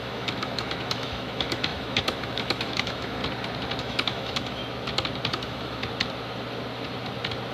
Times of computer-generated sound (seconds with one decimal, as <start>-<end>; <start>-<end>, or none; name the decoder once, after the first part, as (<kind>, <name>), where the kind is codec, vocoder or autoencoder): 0.0-3.2 (autoencoder, DAC-VAE); 3.8-4.6; 5.3-5.8